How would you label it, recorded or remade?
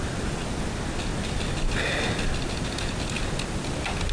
recorded